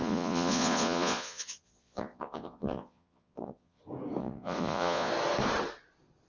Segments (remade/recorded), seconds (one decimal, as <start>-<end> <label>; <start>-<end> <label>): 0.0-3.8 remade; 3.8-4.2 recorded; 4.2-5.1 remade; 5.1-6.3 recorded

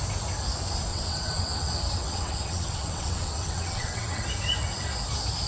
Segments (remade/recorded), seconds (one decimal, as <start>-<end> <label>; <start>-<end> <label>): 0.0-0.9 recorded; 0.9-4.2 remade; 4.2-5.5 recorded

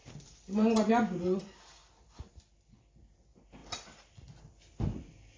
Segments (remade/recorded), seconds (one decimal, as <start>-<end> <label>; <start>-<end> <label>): 0.0-0.9 remade; 0.9-3.6 recorded; 3.6-4.8 remade; 4.8-5.4 recorded

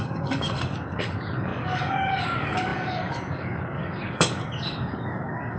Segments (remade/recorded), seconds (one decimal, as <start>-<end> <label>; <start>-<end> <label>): 0.0-5.6 remade